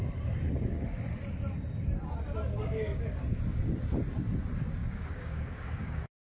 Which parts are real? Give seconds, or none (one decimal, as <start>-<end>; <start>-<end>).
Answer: 0.0-2.5; 3.0-4.8